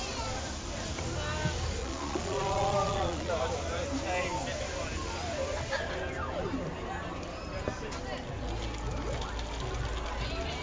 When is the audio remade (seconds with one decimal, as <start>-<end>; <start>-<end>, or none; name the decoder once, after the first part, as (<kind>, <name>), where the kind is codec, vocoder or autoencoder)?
1.8-3.3 (vocoder, Vocos)